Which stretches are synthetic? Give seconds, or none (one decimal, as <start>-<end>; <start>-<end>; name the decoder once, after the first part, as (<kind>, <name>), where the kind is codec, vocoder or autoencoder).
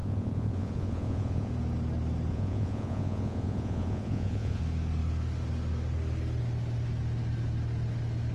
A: 0.0-1.5 (vocoder, Vocos); 2.3-4.6